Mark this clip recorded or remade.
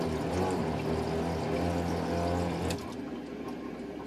recorded